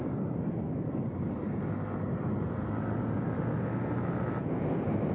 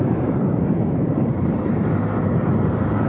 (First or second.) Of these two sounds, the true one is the first